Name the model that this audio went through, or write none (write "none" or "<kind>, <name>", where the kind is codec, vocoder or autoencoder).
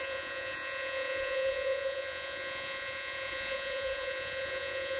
vocoder, Vocos